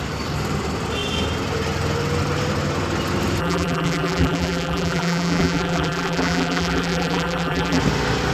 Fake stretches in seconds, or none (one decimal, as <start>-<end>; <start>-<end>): 3.4-7.8